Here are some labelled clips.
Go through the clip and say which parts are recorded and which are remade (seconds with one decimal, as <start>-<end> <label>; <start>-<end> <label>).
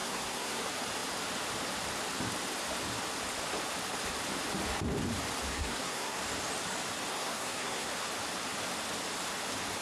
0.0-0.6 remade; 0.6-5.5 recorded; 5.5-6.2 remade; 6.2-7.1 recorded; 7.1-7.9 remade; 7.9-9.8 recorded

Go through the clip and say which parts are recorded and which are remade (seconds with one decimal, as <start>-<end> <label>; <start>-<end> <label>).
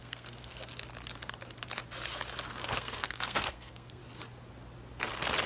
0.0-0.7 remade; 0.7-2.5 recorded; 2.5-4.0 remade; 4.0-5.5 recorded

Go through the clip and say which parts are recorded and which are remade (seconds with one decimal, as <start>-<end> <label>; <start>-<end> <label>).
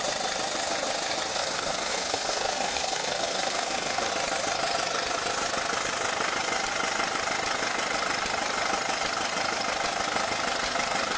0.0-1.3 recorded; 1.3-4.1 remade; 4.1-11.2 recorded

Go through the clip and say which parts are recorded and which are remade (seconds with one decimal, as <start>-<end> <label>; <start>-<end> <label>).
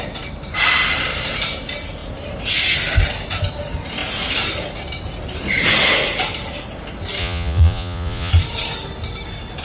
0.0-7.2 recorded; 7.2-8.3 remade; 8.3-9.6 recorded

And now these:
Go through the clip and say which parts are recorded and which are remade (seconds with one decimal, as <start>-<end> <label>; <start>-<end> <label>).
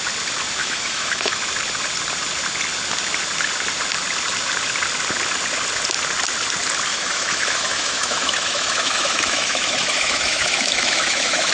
0.0-0.6 recorded; 0.6-1.4 remade; 1.4-6.9 recorded; 6.9-11.5 remade